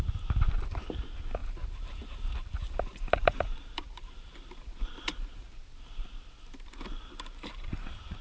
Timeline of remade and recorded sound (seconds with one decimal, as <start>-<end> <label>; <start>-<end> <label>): 0.0-3.2 recorded; 3.2-8.2 remade